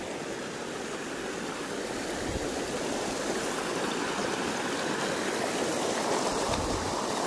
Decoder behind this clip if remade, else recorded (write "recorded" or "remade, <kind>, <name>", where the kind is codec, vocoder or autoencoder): recorded